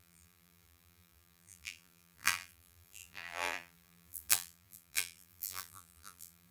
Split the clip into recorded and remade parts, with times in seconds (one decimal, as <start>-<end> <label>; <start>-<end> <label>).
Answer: 0.0-6.5 remade